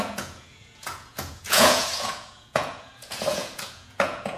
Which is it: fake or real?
fake